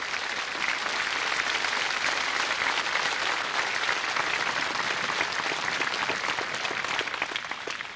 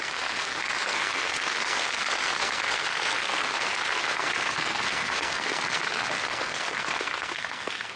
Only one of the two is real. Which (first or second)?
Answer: first